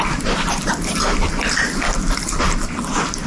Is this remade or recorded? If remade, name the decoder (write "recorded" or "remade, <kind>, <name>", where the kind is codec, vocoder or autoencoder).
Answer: recorded